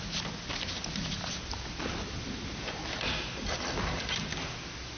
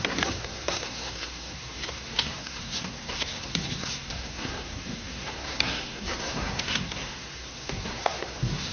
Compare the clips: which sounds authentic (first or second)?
first